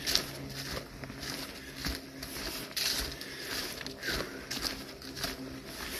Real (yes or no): yes